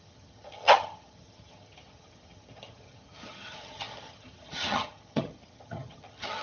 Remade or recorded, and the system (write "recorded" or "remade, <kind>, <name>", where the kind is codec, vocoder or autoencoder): remade, vocoder, HiFi-GAN